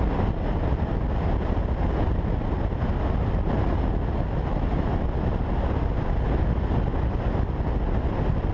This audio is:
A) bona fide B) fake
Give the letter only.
A